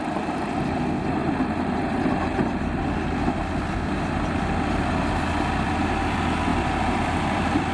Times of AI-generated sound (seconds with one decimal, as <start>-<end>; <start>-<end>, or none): 1.2-2.8; 6.5-7.7